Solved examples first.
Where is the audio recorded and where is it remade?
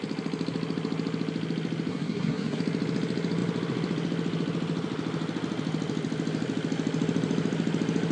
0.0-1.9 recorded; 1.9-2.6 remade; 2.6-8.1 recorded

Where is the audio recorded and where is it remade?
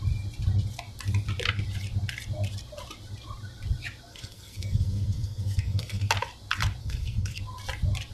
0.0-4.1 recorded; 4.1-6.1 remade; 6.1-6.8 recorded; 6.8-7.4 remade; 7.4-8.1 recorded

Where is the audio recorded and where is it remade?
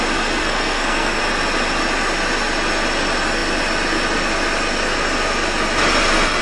0.0-0.4 recorded; 0.4-1.2 remade; 1.2-6.4 recorded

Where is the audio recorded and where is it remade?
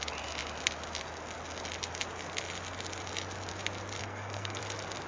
0.0-4.0 recorded; 4.0-4.6 remade; 4.6-5.1 recorded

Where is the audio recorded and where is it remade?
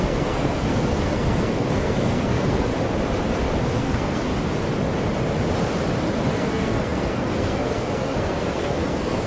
0.0-2.7 remade; 2.7-3.6 recorded; 3.6-4.3 remade; 4.3-6.3 recorded; 6.3-9.3 remade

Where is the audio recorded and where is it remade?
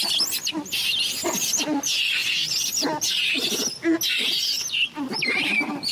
0.0-5.9 recorded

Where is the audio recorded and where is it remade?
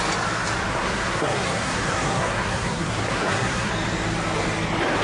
0.0-0.7 recorded; 0.7-3.7 remade; 3.7-5.0 recorded